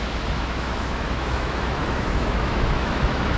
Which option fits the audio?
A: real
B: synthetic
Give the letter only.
B